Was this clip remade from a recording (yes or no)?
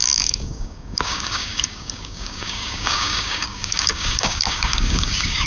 yes